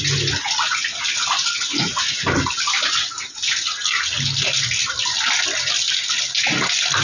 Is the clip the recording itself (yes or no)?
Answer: yes